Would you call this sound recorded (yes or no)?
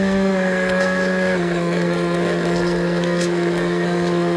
no